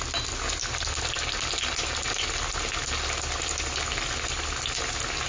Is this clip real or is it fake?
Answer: real